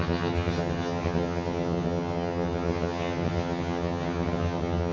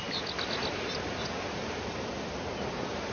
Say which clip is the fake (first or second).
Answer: first